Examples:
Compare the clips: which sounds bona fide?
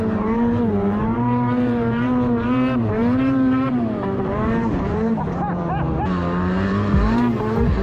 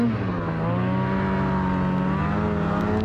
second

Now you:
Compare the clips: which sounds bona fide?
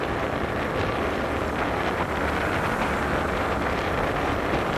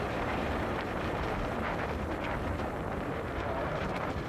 first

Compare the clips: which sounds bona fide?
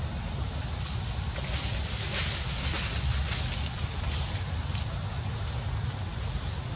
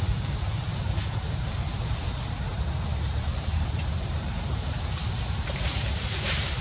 first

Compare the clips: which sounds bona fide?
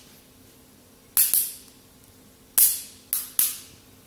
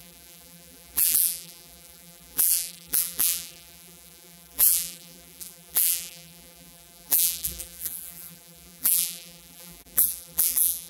first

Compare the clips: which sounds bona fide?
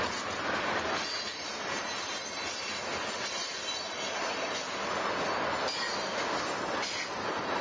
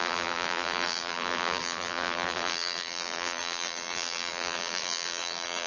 first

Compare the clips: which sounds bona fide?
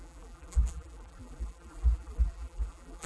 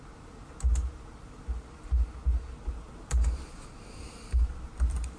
second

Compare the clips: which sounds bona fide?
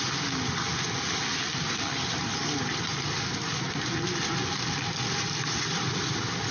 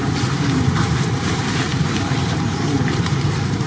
first